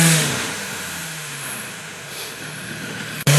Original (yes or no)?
no